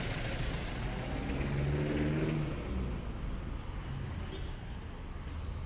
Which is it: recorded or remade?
recorded